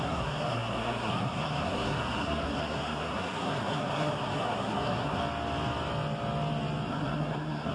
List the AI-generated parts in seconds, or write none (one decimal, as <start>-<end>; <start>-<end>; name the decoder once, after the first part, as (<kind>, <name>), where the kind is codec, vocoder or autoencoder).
0.0-5.2 (codec, SNAC); 6.9-7.7